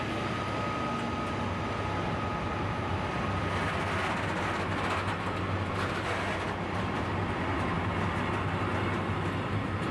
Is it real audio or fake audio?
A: real